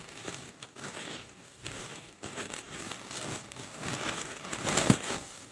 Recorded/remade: remade